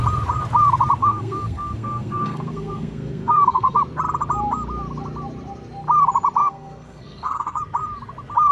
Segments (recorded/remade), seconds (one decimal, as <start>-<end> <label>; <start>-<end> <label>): 0.0-1.0 recorded; 1.0-3.8 remade; 3.8-6.4 recorded; 6.4-7.6 remade; 7.6-8.5 recorded